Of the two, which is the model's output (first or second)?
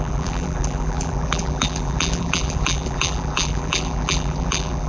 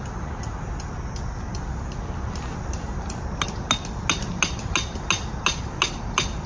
first